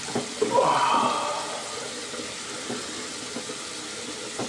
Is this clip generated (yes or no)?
no